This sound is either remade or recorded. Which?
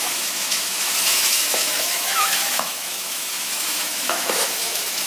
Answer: remade